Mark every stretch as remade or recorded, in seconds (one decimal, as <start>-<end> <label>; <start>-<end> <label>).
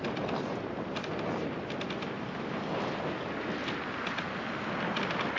0.0-5.4 recorded